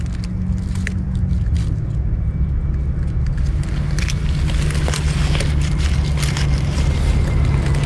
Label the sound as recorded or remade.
recorded